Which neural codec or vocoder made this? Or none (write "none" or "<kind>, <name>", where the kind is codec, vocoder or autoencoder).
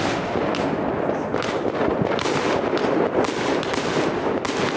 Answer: none